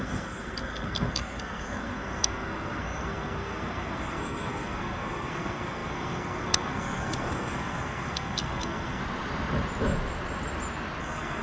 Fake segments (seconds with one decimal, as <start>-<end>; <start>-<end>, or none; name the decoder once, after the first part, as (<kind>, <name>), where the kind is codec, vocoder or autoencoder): 0.0-9.0 (codec, SNAC); 11.0-11.4